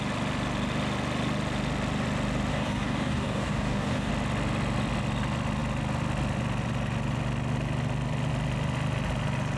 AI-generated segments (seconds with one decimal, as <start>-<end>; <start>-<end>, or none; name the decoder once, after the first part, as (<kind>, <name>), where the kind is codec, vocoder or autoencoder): 2.5-4.1 (codec, DAC)